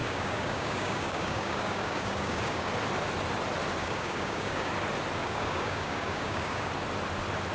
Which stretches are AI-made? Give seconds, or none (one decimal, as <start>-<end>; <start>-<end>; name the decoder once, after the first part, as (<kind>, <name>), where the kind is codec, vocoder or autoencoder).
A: 0.0-2.7 (codec, DAC); 3.8-4.7; 5.2-6.7